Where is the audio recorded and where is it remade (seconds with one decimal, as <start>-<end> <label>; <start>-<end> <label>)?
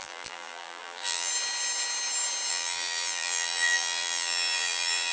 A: 0.0-1.3 remade; 1.3-2.5 recorded; 2.5-5.1 remade